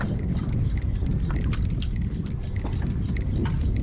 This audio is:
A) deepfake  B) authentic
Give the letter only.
B